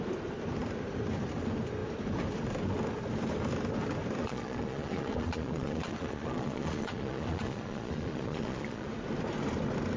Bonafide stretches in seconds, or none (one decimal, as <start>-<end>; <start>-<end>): 0.0-4.2; 8.9-10.0